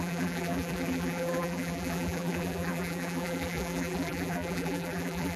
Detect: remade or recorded remade